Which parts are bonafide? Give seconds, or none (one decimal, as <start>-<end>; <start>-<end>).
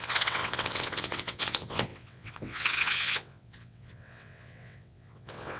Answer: none